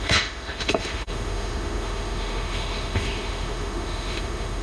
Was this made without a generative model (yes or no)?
no